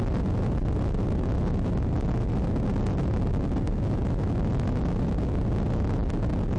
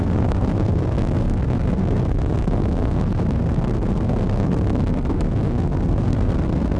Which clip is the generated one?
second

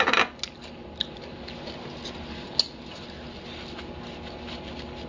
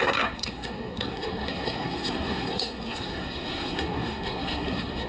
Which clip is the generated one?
second